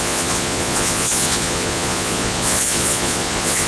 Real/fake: fake